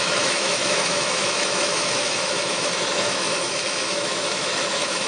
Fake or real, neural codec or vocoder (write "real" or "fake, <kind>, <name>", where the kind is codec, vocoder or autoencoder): fake, autoencoder, DAC-VAE